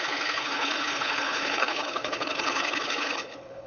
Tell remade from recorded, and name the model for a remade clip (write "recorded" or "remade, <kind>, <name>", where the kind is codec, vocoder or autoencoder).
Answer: remade, codec, HILCodec